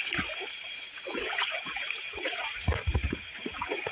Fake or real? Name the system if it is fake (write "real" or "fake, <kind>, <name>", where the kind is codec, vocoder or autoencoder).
fake, vocoder, Vocos